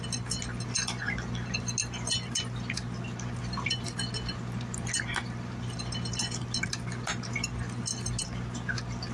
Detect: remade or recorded recorded